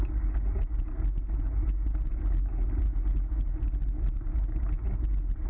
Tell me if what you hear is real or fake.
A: real